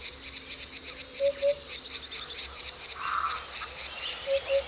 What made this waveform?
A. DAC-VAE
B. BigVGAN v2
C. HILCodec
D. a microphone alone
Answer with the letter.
D